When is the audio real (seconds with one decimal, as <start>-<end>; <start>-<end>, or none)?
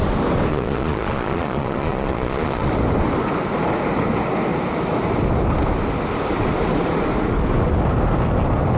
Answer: 0.0-0.5; 2.7-8.8